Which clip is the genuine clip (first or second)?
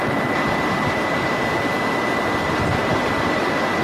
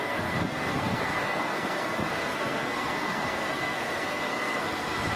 first